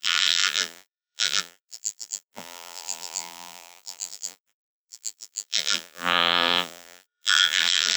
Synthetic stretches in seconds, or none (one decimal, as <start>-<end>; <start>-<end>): 0.0-8.0